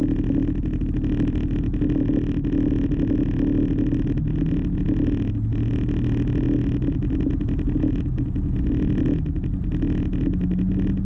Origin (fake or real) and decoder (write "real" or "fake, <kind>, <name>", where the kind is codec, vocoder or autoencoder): real